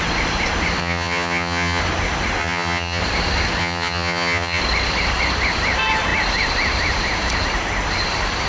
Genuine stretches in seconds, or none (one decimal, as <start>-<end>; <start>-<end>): 0.0-0.8; 1.8-2.4; 3.0-3.6; 4.6-8.5